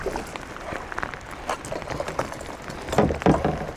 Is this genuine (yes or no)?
yes